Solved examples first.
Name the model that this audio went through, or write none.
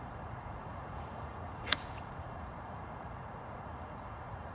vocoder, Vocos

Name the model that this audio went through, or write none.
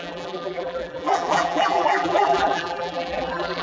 vocoder, BigVGAN v2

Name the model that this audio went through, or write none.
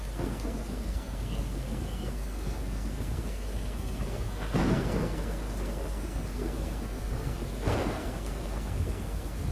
codec, SNAC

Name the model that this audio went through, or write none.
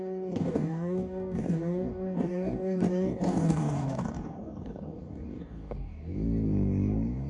codec, DAC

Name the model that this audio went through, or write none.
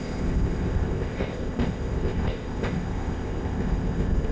codec, ZipCodec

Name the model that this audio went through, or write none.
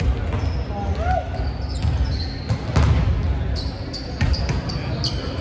none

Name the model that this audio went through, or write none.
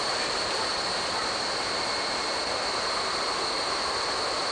none